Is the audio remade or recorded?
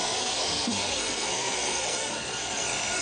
remade